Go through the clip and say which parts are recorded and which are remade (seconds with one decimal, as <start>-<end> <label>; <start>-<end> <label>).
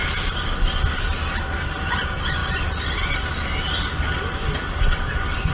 0.0-5.5 recorded